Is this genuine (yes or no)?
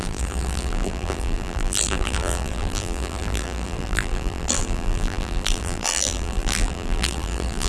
no